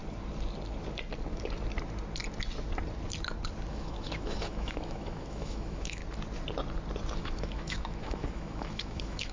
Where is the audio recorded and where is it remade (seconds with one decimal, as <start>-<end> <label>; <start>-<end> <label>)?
0.0-3.7 recorded; 3.7-6.0 remade; 6.0-7.2 recorded; 7.2-9.3 remade